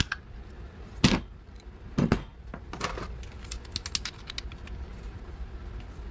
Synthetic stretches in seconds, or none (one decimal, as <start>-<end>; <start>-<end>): none